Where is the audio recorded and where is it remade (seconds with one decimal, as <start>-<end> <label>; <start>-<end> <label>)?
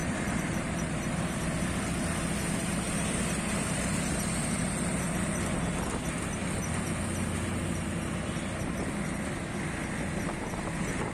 0.0-1.5 remade; 1.5-2.6 recorded; 2.6-5.0 remade; 5.0-11.1 recorded